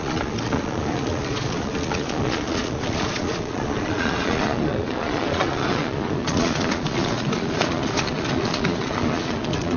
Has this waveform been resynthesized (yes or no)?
yes